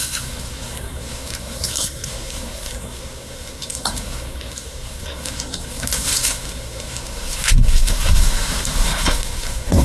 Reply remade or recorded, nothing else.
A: remade